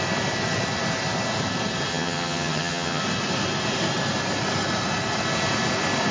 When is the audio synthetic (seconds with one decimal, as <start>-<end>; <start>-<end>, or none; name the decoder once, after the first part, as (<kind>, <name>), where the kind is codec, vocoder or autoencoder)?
1.9-3.0 (vocoder, HiFi-GAN)